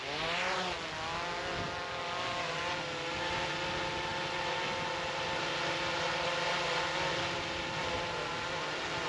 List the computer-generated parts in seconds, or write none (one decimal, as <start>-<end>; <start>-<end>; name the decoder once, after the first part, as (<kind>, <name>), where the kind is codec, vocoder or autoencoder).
none

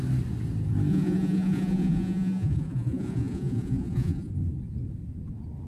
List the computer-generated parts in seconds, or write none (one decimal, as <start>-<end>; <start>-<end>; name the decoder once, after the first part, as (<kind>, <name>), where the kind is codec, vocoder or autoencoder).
0.9-4.3 (vocoder, Vocos)

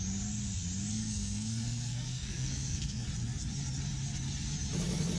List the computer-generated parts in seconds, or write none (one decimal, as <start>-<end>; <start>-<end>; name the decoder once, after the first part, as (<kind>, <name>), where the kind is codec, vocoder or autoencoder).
0.9-3.1 (codec, SNAC)

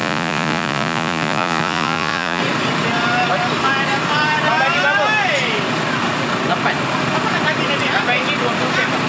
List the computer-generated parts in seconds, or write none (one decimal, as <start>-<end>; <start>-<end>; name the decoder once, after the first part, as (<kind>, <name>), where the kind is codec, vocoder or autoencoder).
0.0-2.4 (vocoder, Vocos)

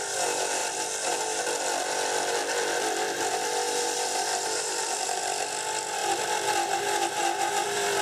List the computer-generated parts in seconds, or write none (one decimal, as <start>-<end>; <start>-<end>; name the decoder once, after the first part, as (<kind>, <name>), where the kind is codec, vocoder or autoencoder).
0.0-0.6 (vocoder, BigVGAN v2); 1.1-6.0; 7.5-8.0

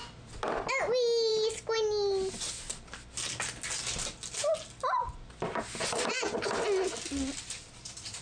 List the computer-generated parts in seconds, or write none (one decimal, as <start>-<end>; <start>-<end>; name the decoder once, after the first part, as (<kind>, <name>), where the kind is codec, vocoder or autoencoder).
none